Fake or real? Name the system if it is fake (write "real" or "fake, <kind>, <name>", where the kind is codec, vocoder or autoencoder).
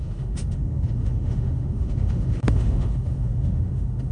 fake, autoencoder, DAC-VAE